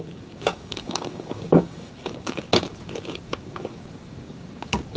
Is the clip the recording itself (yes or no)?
no